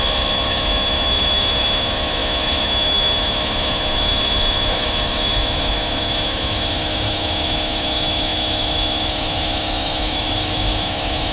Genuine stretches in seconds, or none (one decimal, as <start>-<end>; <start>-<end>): none